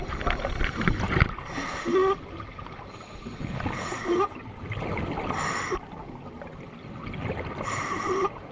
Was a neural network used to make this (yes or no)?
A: no